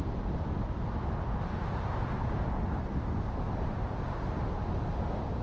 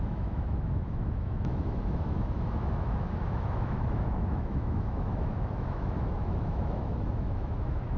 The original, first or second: first